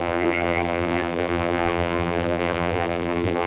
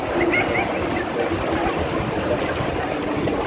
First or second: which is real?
second